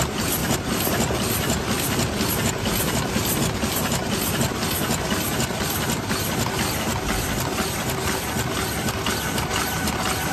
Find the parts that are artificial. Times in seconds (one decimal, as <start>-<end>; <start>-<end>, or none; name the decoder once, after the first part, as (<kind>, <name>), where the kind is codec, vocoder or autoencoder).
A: none